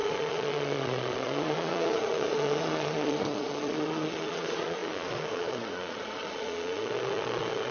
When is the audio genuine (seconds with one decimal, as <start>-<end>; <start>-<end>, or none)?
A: none